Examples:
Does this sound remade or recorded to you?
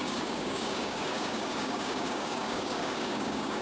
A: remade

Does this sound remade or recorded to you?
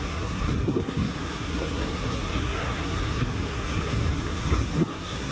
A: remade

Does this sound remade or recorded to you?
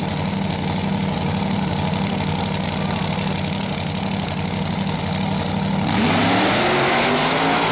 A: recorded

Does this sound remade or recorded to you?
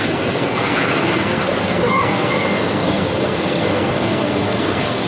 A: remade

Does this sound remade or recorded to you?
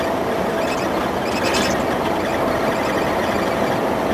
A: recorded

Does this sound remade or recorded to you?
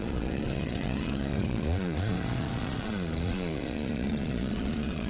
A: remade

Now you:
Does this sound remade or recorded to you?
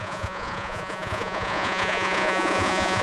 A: remade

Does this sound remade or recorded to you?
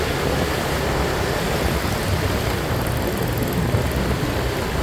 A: recorded